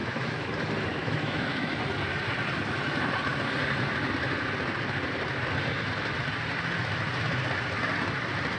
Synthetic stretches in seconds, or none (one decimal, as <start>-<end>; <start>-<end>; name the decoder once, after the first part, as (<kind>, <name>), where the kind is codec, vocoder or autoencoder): 0.0-0.5 (autoencoder, DAC-VAE); 0.9-1.7